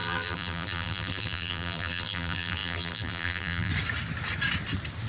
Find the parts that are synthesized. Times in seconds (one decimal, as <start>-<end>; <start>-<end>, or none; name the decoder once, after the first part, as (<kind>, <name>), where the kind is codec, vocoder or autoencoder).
0.0-3.7 (vocoder, BigVGAN v2)